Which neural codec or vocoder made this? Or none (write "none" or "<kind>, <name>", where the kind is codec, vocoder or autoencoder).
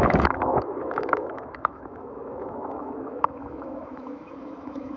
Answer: autoencoder, DAC-VAE